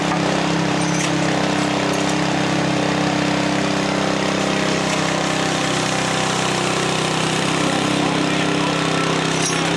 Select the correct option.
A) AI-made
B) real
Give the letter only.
B